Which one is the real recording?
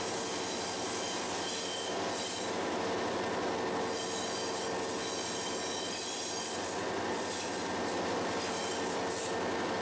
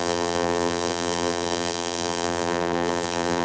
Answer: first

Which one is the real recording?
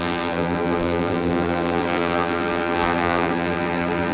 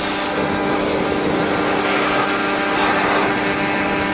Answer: second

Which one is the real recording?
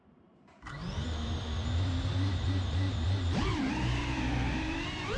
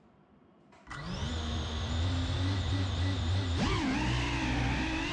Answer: second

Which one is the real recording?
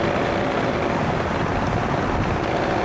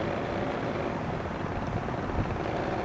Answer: first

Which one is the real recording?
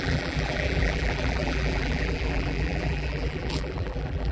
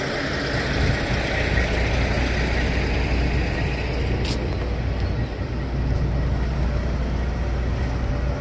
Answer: second